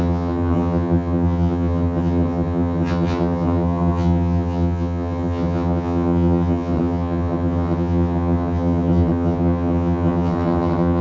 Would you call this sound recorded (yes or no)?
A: no